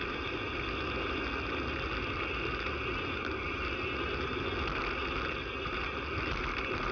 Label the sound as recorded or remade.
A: recorded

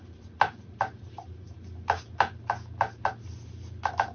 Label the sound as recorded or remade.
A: recorded